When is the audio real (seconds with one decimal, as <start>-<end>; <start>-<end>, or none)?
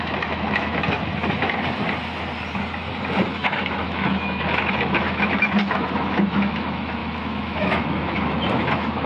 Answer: 1.1-3.3